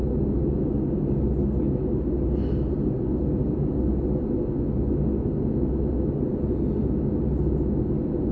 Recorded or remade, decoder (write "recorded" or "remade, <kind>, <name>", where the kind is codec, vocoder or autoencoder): recorded